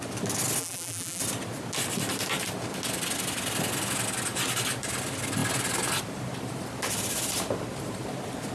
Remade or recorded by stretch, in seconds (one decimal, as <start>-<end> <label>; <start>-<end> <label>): 0.0-0.6 recorded; 0.6-1.2 remade; 1.2-8.5 recorded